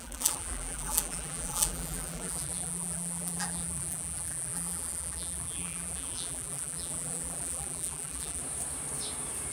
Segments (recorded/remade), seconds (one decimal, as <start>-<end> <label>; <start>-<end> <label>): 0.0-8.4 remade; 8.4-9.5 recorded